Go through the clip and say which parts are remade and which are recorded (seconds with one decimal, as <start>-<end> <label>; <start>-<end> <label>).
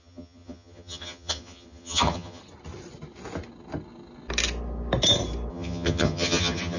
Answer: 0.0-2.4 remade; 2.4-5.5 recorded; 5.5-6.8 remade